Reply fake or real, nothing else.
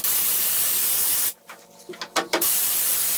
real